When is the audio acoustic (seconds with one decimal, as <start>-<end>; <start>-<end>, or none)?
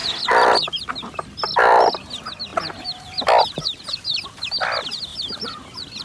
0.0-6.0